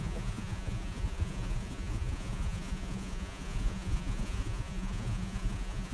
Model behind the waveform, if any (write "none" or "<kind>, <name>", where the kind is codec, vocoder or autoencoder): vocoder, Vocos